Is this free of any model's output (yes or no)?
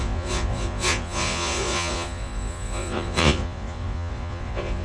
no